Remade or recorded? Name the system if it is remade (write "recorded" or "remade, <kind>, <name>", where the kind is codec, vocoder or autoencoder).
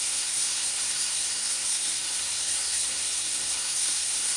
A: remade, codec, SNAC